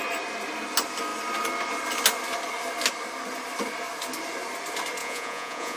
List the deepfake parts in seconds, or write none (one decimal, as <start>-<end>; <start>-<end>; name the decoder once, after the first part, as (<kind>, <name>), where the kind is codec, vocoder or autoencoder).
5.0-5.8 (vocoder, Vocos)